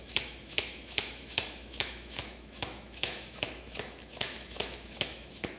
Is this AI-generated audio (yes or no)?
yes